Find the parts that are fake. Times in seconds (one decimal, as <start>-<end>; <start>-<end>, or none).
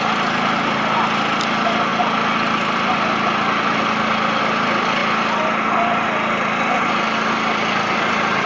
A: none